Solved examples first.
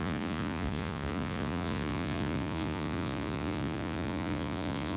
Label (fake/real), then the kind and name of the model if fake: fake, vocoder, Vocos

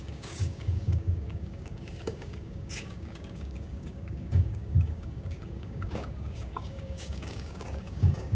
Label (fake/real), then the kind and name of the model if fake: fake, codec, DAC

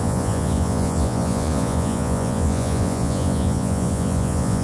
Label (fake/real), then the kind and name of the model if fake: fake, vocoder, Vocos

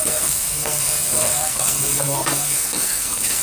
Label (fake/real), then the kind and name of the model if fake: fake, codec, SNAC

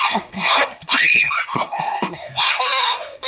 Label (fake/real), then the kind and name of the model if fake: fake, codec, SNAC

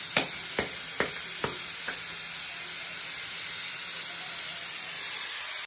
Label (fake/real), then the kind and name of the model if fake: real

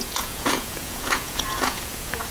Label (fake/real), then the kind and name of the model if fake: fake, vocoder, Vocos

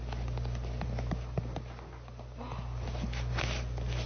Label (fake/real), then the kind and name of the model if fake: real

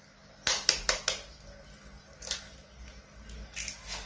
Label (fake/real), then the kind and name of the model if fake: real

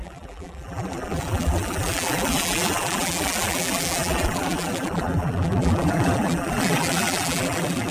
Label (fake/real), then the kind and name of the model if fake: fake, vocoder, BigVGAN v2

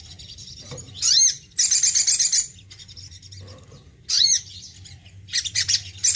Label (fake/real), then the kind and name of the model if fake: real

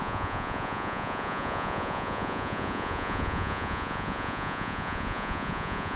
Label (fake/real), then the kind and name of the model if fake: fake, vocoder, Vocos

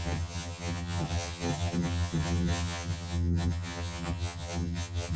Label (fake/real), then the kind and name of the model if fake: fake, vocoder, HiFi-GAN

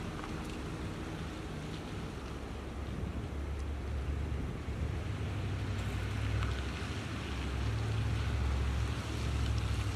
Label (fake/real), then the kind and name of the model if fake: real